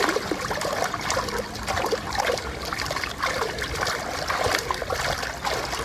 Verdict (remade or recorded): recorded